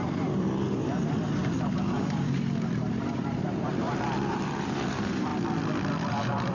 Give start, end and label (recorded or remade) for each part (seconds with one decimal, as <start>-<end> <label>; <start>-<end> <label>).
0.0-5.3 remade; 5.3-6.1 recorded; 6.1-6.5 remade